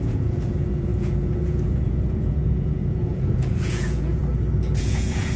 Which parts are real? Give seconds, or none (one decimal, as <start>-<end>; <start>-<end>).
4.2-4.8